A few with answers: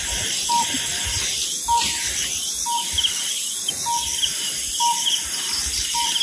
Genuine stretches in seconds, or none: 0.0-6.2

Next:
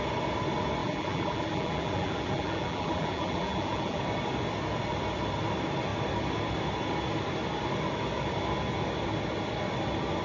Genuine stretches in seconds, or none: 0.0-0.8; 4.0-10.2

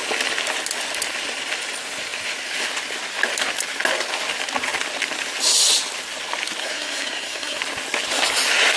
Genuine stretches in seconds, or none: 0.0-6.6; 7.6-8.8

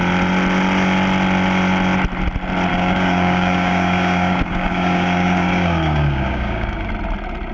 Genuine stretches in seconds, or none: 0.0-2.7; 6.9-7.5

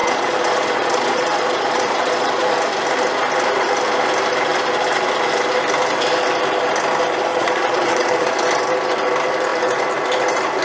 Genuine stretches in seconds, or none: 2.5-7.3; 8.3-10.6

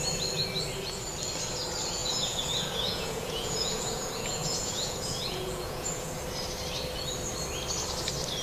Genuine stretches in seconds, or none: 0.0-2.0; 6.2-8.4